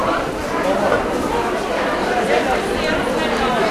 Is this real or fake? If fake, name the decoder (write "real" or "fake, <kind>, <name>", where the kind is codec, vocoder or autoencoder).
real